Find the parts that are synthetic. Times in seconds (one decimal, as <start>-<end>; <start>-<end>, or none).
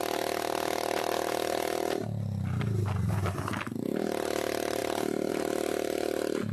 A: none